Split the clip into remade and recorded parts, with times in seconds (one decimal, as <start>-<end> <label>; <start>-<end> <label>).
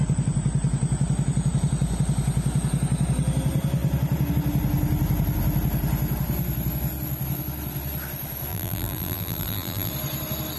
0.0-8.5 recorded; 8.5-9.9 remade; 9.9-10.6 recorded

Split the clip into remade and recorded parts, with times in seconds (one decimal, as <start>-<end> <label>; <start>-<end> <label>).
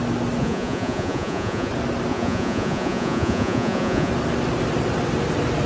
0.0-0.4 recorded; 0.4-1.7 remade; 1.7-2.1 recorded; 2.1-4.1 remade; 4.1-5.7 recorded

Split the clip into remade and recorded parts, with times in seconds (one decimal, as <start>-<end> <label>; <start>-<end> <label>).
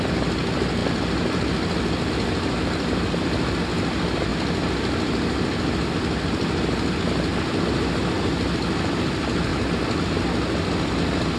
0.0-11.4 recorded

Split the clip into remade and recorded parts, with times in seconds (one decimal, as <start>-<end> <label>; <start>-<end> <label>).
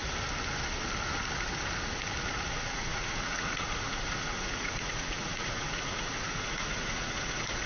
0.0-2.5 recorded; 2.5-7.7 remade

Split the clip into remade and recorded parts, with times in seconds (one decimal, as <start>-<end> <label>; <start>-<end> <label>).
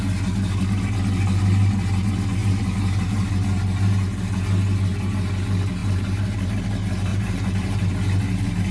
0.0-2.4 recorded; 2.4-3.3 remade; 3.3-5.8 recorded; 5.8-6.6 remade; 6.6-7.1 recorded; 7.1-7.9 remade; 7.9-8.7 recorded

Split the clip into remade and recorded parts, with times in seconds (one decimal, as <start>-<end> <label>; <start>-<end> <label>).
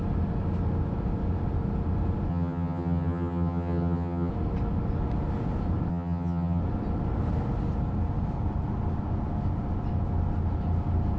0.0-2.3 recorded; 2.3-4.3 remade; 4.3-5.9 recorded; 5.9-6.6 remade; 6.6-11.2 recorded